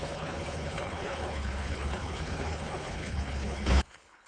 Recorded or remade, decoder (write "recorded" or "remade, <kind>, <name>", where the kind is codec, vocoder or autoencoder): remade, codec, HILCodec